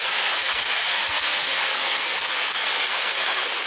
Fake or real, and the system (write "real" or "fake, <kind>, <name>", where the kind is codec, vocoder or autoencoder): fake, codec, SNAC